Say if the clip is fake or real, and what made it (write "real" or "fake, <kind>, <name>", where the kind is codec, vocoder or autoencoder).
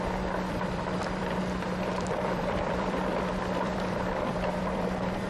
fake, vocoder, BigVGAN v2